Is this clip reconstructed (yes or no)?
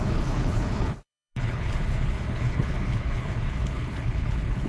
yes